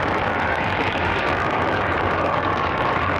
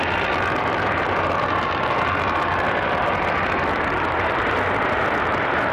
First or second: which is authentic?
second